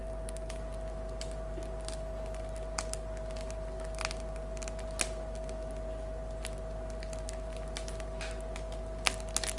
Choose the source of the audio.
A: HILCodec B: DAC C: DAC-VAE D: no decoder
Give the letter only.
D